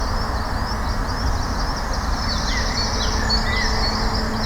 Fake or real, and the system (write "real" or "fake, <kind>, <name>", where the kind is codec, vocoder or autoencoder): real